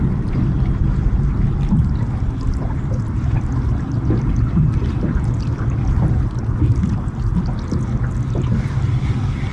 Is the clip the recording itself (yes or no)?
yes